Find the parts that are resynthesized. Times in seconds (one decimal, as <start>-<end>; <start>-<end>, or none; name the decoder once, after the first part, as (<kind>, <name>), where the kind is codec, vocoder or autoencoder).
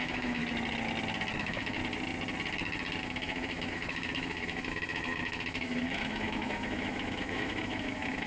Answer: 0.0-0.4 (autoencoder, DAC-VAE); 1.4-1.8; 3.0-8.3